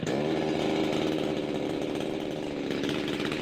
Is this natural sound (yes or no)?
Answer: yes